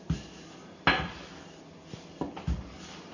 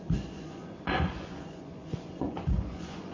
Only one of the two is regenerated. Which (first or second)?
second